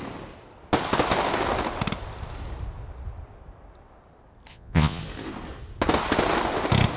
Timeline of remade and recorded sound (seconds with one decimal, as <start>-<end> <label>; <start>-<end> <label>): 0.0-4.5 recorded; 4.5-5.0 remade; 5.0-7.0 recorded